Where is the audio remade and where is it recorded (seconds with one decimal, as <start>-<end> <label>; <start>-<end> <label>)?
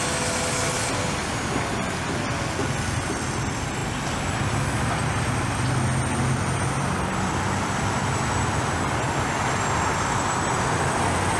0.0-11.4 recorded